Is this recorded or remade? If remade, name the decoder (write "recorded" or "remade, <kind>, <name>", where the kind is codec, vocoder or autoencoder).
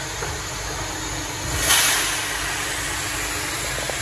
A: recorded